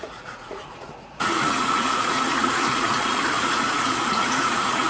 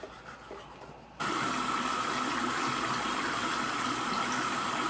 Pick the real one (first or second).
second